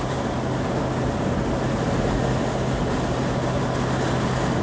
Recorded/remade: recorded